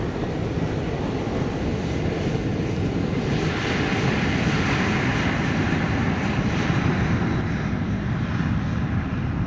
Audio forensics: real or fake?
real